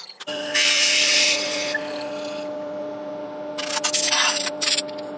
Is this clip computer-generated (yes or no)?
no